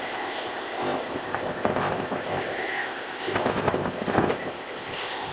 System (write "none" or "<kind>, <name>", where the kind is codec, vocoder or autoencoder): codec, ZipCodec